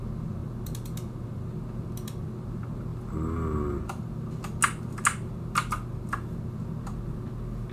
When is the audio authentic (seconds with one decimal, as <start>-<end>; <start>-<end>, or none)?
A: 0.0-7.7